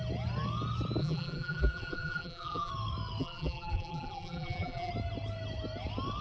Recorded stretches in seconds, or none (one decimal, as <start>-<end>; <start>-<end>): 0.0-1.0; 2.7-3.2; 4.9-6.2

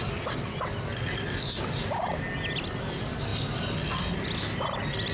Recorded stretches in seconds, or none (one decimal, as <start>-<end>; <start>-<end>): 0.0-5.1